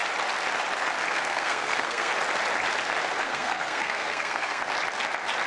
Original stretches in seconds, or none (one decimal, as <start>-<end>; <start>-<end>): 0.0-1.1; 2.1-3.2; 4.6-5.5